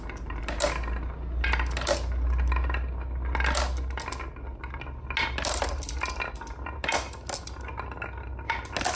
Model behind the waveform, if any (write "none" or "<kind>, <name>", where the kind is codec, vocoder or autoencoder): none